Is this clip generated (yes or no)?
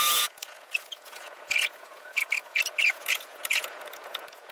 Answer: yes